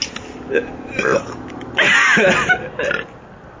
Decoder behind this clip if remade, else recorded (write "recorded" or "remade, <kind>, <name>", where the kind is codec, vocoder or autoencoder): recorded